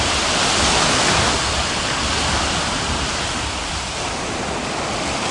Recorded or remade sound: recorded